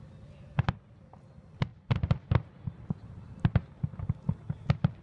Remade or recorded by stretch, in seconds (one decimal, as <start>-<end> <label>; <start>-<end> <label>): 0.0-5.0 recorded